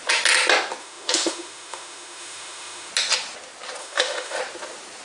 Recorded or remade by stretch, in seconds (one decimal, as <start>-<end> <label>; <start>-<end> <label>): 0.0-0.8 recorded; 0.8-2.9 remade; 2.9-3.8 recorded; 3.8-4.4 remade; 4.4-5.0 recorded